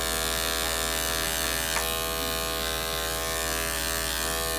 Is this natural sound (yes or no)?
yes